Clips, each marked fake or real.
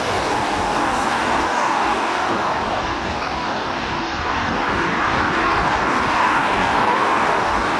fake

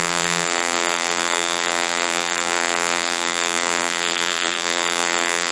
fake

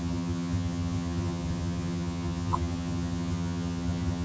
fake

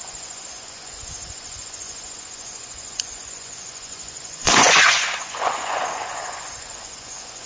fake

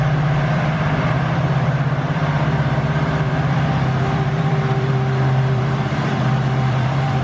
fake